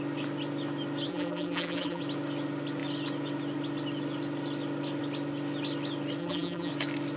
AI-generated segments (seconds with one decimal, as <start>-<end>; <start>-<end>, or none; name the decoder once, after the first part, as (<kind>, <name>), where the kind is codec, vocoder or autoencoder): 1.1-2.0 (vocoder, BigVGAN v2); 6.2-6.7